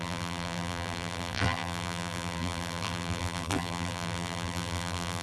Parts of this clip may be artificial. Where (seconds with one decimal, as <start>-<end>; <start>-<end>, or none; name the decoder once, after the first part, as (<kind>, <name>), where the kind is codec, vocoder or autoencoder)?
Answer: 0.0-5.2 (vocoder, BigVGAN v2)